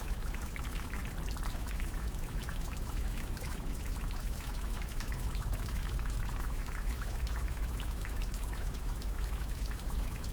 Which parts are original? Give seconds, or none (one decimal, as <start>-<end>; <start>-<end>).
1.0-1.5